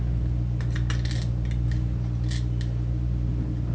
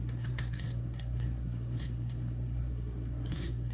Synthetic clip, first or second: second